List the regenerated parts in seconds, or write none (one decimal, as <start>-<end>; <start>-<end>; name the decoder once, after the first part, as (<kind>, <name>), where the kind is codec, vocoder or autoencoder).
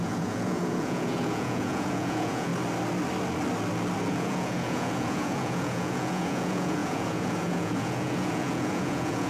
0.0-2.5 (vocoder, Vocos); 4.1-9.3